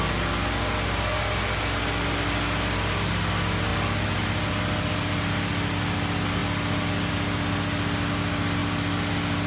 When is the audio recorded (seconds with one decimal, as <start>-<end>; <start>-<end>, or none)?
0.0-9.5